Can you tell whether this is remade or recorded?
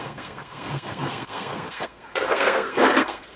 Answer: remade